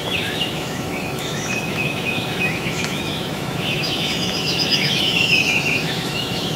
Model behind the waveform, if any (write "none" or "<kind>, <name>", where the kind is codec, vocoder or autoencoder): autoencoder, DAC-VAE